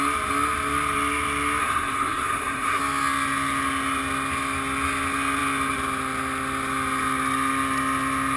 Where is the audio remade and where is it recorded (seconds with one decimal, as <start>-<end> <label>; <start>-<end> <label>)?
0.0-1.6 recorded; 1.6-2.8 remade; 2.8-8.4 recorded